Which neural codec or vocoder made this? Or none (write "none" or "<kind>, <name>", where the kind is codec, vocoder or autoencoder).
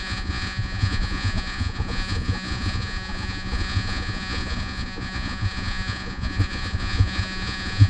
vocoder, Vocos